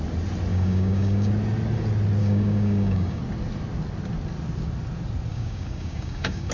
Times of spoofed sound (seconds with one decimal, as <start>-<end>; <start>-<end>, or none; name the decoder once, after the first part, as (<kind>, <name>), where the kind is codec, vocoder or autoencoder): 0.5-1.3 (codec, DAC); 2.2-3.2; 5.3-6.5